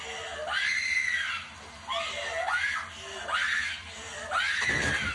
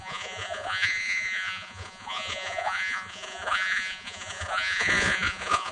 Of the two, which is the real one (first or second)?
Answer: first